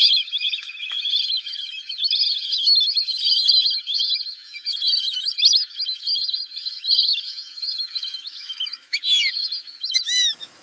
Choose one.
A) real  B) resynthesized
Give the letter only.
B